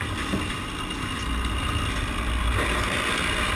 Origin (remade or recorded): recorded